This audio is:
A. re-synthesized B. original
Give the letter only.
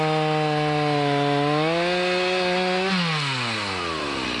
B